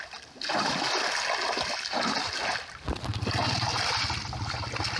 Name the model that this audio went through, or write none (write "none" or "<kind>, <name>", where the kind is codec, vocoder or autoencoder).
none